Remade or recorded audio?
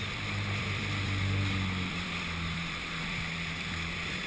remade